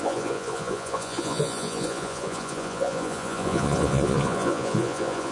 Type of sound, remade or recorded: remade